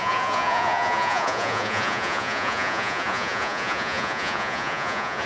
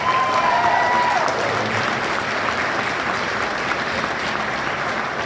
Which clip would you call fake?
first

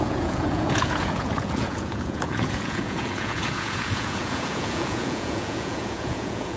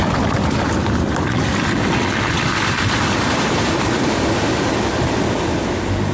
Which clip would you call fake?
first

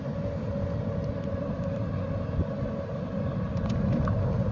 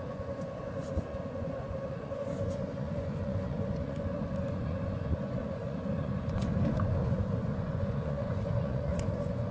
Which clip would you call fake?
second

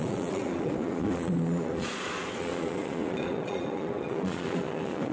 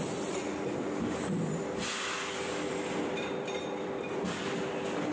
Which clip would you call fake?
first